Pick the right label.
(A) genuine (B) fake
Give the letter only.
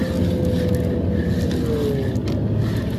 A